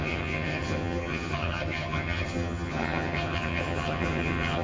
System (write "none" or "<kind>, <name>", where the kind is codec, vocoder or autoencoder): vocoder, HiFi-GAN